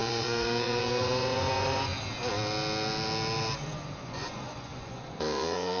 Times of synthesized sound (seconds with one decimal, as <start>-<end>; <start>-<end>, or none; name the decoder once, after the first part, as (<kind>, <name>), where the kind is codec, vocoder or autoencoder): 0.0-1.9 (vocoder, Vocos); 4.0-5.8